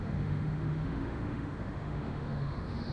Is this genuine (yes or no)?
no